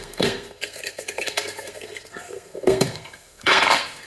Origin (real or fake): fake